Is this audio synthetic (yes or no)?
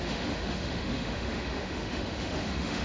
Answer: yes